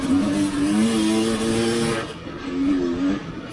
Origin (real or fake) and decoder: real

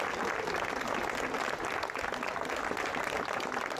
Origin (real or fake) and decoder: real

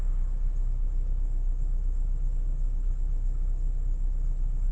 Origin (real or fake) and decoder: real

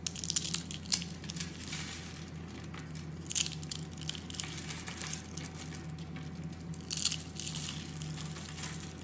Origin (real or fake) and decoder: real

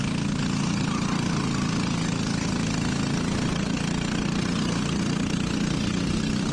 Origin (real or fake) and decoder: real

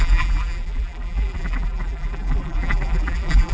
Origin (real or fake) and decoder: fake, vocoder, BigVGAN v2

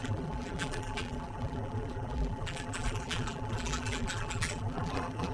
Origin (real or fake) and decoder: fake, vocoder, BigVGAN v2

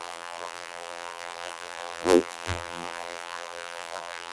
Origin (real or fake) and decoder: fake, vocoder, BigVGAN v2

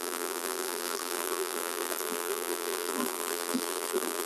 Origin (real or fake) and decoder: fake, vocoder, BigVGAN v2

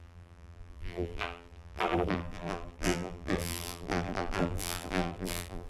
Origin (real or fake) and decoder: fake, vocoder, BigVGAN v2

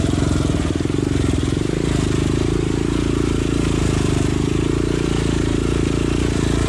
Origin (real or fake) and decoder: fake, vocoder, BigVGAN v2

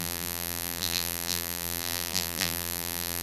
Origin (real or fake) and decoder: fake, vocoder, BigVGAN v2